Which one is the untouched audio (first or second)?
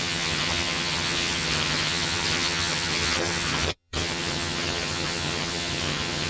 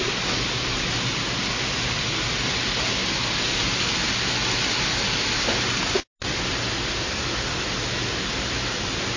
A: second